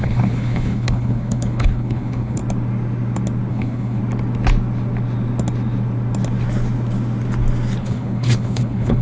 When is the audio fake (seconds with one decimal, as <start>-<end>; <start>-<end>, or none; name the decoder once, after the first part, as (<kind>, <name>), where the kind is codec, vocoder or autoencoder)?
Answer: 0.0-2.4 (codec, HILCodec); 3.5-4.0; 7.8-9.0